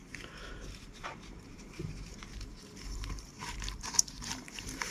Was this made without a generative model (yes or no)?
no